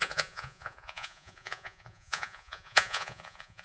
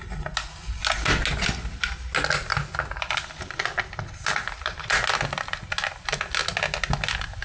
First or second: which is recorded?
second